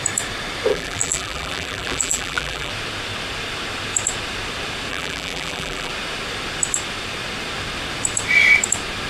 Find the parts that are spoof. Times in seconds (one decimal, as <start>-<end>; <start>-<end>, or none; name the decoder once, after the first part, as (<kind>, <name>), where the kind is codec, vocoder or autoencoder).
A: 0.7-2.7 (vocoder, BigVGAN v2); 4.9-5.9